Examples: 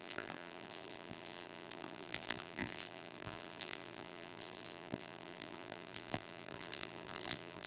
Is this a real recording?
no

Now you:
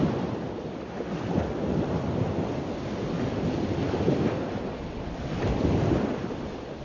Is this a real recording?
yes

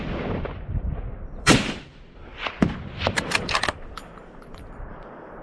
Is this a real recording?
no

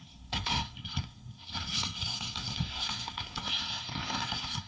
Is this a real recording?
no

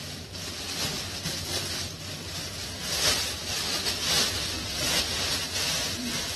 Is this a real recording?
yes